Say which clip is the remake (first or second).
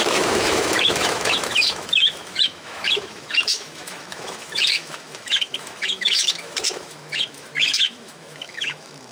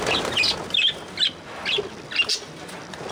first